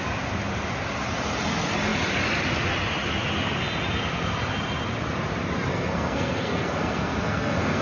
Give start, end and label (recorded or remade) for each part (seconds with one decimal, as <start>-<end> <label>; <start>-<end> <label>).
0.0-5.7 recorded; 5.7-7.8 remade